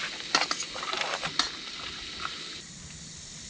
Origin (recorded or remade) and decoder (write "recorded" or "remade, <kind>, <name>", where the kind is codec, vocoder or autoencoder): recorded